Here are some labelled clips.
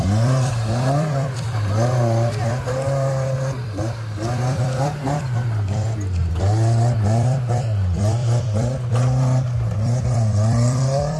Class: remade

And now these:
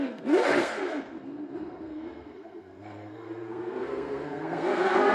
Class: remade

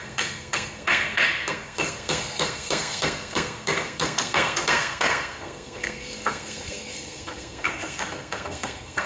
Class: remade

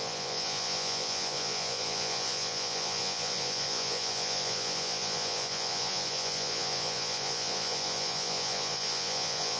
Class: remade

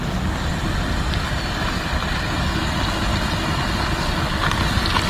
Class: recorded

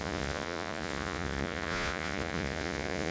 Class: remade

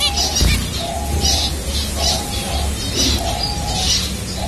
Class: recorded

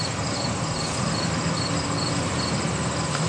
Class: recorded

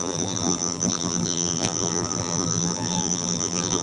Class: remade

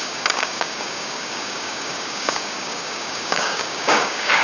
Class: remade